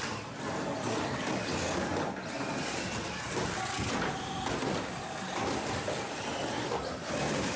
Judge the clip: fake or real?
real